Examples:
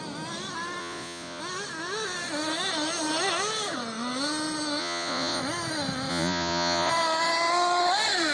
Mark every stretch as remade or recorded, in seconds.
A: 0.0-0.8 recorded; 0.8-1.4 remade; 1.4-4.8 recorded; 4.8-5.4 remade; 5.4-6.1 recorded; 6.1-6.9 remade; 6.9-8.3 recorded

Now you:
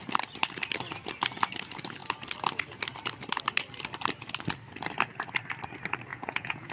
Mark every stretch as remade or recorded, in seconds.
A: 0.0-6.1 recorded; 6.1-6.7 remade

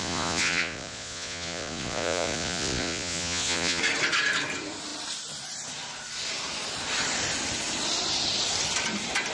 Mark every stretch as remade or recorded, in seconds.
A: 0.0-3.8 remade; 3.8-9.3 recorded

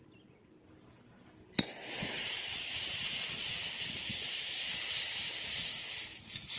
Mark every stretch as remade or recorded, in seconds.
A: 0.0-6.6 recorded